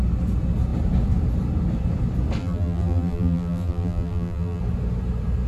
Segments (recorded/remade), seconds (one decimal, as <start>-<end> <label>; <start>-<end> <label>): 0.0-2.4 recorded; 2.4-4.6 remade; 4.6-5.5 recorded